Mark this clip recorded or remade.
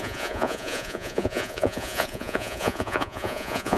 remade